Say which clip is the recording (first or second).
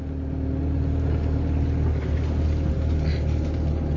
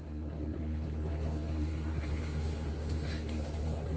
first